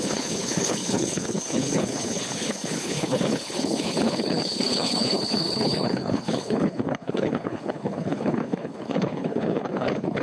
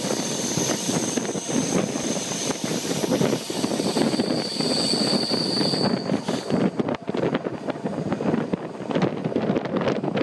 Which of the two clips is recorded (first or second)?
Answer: second